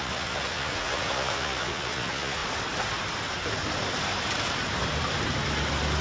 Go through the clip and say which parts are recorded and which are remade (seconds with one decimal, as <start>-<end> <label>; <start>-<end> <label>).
0.0-2.4 remade; 2.4-6.0 recorded